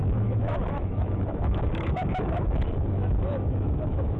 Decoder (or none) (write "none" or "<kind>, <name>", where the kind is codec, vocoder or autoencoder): autoencoder, DAC-VAE